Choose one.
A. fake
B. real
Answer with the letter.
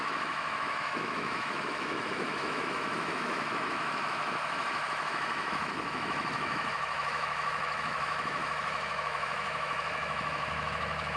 A